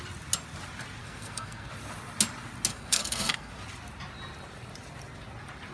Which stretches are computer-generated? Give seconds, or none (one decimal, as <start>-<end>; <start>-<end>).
1.0-1.7; 2.7-3.5